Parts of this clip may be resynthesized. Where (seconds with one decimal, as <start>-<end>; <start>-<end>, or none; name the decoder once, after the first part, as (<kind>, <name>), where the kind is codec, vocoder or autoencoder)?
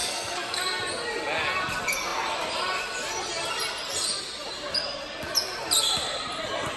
0.0-0.6 (codec, SNAC)